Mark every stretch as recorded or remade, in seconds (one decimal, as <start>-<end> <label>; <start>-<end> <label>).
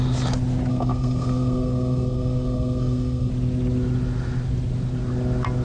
0.0-0.7 recorded; 0.7-3.3 remade; 3.3-5.6 recorded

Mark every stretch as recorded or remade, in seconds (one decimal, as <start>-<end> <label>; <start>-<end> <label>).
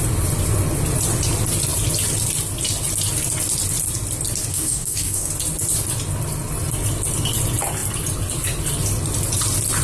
0.0-4.5 recorded; 4.5-5.3 remade; 5.3-9.8 recorded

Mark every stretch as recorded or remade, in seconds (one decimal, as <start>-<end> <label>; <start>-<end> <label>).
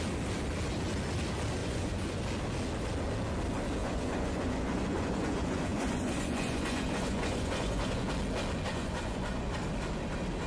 0.0-1.6 recorded; 1.6-2.2 remade; 2.2-3.8 recorded; 3.8-8.1 remade; 8.1-8.7 recorded; 8.7-9.5 remade; 9.5-10.5 recorded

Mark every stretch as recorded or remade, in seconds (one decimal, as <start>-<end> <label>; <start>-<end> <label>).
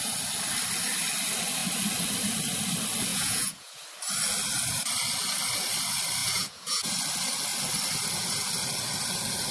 0.0-3.1 recorded; 3.1-3.8 remade; 3.8-6.2 recorded; 6.2-6.9 remade; 6.9-9.5 recorded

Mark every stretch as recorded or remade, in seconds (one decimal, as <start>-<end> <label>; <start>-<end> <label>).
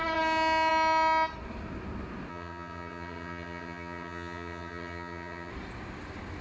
0.0-2.3 recorded; 2.3-5.5 remade; 5.5-6.4 recorded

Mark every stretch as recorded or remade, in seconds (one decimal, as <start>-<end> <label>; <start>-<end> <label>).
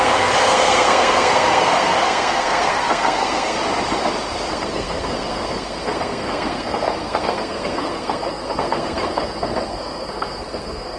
0.0-3.6 remade; 3.6-4.5 recorded; 4.5-11.0 remade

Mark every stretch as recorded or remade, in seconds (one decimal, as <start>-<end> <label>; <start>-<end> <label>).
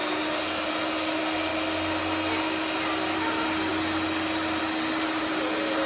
0.0-5.9 recorded